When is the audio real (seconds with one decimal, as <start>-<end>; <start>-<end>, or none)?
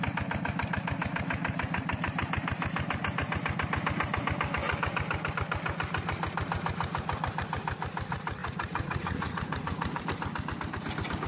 0.0-8.4; 10.0-11.3